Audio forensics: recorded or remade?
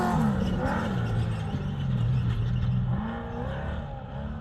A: recorded